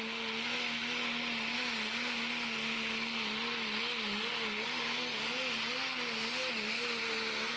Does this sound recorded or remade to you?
recorded